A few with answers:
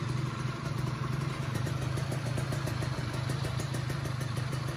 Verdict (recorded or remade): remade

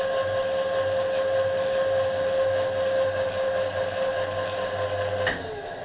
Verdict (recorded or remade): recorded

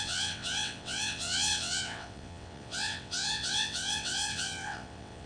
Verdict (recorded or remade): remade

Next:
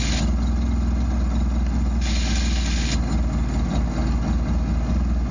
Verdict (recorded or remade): recorded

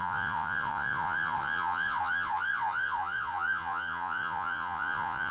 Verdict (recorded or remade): remade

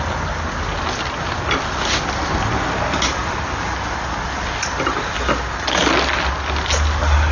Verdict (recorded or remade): recorded